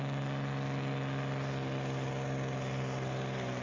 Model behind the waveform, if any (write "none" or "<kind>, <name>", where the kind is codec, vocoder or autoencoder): none